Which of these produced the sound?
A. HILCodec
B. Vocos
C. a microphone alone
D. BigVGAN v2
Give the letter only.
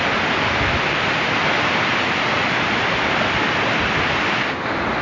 C